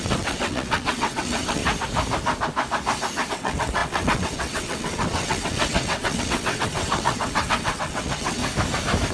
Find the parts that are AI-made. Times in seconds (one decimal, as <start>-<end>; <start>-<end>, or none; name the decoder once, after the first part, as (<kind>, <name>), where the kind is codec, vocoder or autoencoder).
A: 0.0-1.6 (vocoder, WaveNeXt); 3.3-8.4